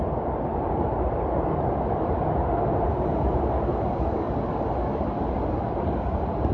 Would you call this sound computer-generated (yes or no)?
no